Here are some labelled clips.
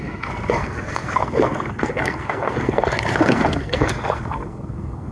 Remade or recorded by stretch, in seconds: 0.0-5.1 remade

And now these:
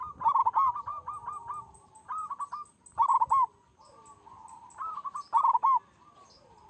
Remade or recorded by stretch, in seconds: 0.0-0.9 recorded; 0.9-1.9 remade; 1.9-6.7 recorded

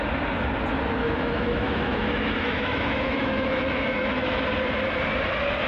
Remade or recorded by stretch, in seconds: 0.0-1.0 recorded; 1.0-4.4 remade; 4.4-5.7 recorded

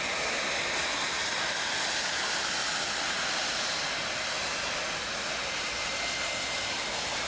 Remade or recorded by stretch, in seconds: 0.0-7.3 recorded

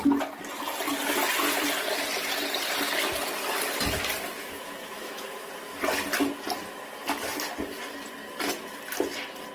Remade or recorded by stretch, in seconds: 0.0-4.4 recorded; 4.4-5.5 remade; 5.5-9.5 recorded

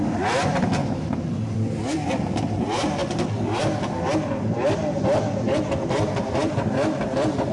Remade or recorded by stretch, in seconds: 0.0-0.8 remade; 0.8-1.3 recorded; 1.3-3.0 remade; 3.0-5.2 recorded; 5.2-7.5 remade